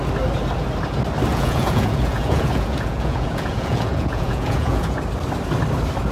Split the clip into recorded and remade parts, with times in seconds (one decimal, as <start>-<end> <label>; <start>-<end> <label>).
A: 0.0-1.3 recorded; 1.3-5.0 remade; 5.0-6.1 recorded